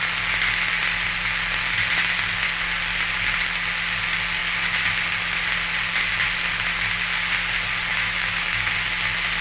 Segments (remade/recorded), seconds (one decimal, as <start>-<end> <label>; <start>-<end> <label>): 0.0-7.9 recorded; 7.9-8.7 remade; 8.7-9.4 recorded